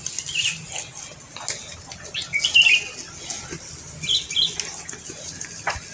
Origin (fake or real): real